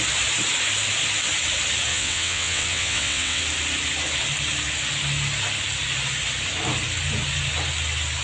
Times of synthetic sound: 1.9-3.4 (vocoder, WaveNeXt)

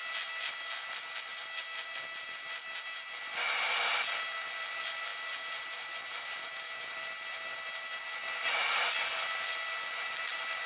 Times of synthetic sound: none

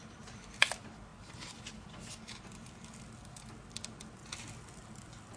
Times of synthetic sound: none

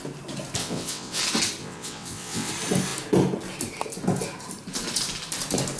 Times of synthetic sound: 0.6-1.2 (vocoder, WaveNeXt); 1.6-2.5

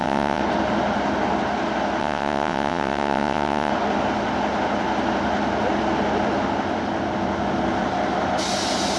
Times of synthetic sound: 0.0-0.4 (vocoder, WaveNeXt); 2.0-3.7